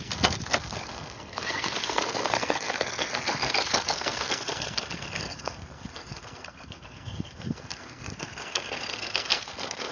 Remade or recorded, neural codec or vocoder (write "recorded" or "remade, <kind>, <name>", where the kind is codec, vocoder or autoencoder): remade, codec, SNAC